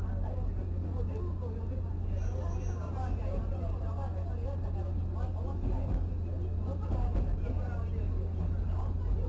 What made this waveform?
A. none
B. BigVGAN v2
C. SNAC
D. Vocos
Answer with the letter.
A